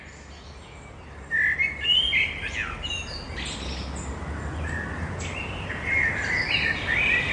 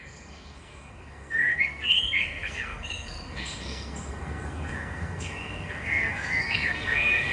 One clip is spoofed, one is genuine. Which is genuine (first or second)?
first